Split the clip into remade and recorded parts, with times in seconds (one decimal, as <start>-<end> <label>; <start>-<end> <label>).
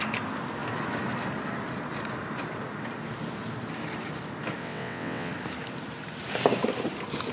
0.0-4.6 recorded; 4.6-5.3 remade; 5.3-7.3 recorded